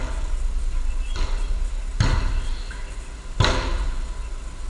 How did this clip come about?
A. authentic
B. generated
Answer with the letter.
A